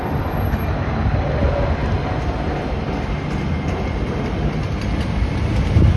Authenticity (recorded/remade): recorded